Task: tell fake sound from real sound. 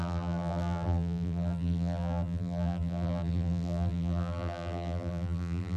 fake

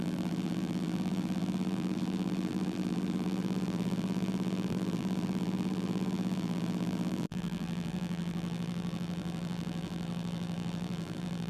fake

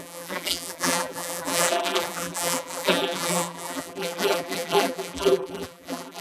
fake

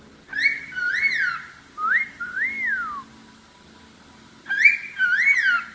real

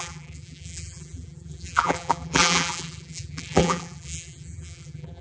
fake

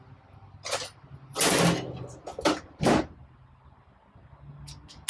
real